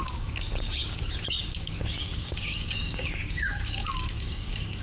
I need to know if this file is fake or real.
fake